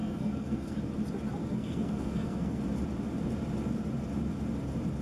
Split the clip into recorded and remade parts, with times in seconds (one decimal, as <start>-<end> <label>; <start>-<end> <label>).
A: 0.0-0.8 remade; 0.8-1.4 recorded; 1.4-2.6 remade; 2.6-5.0 recorded